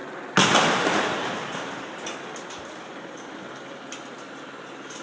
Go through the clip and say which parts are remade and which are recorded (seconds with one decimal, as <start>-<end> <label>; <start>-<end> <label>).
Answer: 0.0-5.0 recorded